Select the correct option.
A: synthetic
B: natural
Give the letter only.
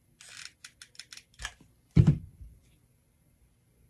B